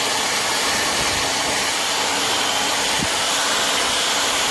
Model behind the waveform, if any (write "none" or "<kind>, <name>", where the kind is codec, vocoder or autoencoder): none